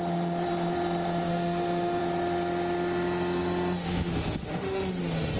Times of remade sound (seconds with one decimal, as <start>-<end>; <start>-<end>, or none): 1.3-2.0; 3.8-5.0